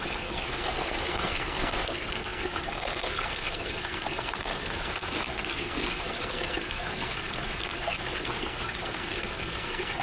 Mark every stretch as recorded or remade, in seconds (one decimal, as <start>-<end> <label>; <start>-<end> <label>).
0.0-10.0 remade